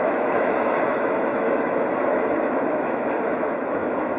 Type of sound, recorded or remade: remade